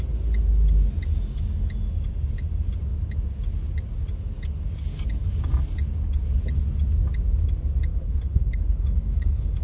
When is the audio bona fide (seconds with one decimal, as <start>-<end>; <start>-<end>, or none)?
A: 0.0-7.9

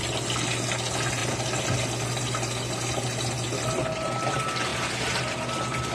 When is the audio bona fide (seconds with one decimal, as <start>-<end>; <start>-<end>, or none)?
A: 0.0-5.9

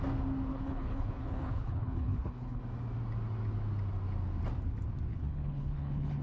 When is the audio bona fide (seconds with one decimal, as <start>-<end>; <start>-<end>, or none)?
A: 0.0-0.5; 2.6-5.1

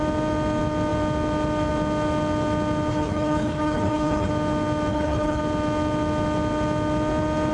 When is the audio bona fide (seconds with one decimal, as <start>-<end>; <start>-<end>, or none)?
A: 0.0-2.9; 4.3-4.9; 5.4-7.5

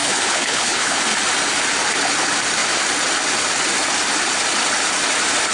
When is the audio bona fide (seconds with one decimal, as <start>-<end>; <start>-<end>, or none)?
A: 1.0-5.5

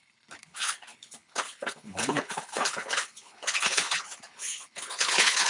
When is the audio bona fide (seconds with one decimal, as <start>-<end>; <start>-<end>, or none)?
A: none

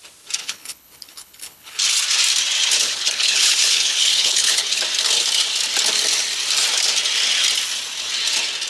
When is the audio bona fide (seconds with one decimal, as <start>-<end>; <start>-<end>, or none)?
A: 0.0-0.4; 1.8-2.8; 4.8-8.7